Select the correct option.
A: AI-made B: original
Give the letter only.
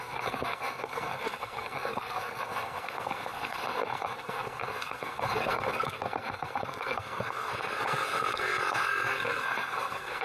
A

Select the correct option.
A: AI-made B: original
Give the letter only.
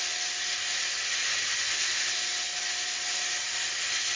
B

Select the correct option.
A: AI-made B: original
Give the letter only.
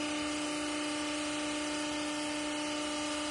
B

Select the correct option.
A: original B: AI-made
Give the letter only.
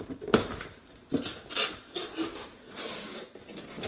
A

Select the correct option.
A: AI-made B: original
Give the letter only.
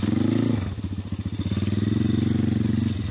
B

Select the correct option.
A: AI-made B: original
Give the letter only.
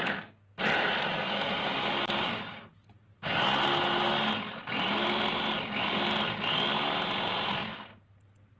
B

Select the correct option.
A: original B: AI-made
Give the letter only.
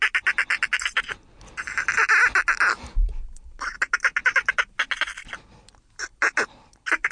A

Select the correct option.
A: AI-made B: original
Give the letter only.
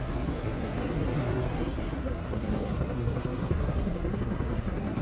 A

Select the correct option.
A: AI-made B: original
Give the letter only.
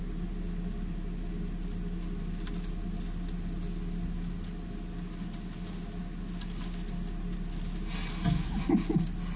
B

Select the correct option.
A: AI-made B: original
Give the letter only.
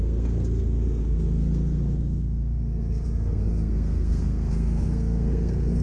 A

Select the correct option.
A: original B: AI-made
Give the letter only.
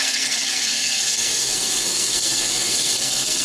B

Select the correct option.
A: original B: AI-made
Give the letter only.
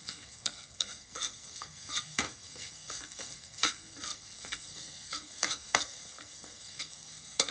B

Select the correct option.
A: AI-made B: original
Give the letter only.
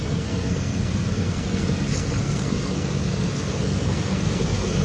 A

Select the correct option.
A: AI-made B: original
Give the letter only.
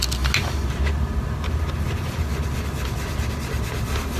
B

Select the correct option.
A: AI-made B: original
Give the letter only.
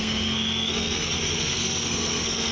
A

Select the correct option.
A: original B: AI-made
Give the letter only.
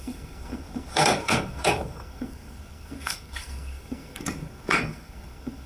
B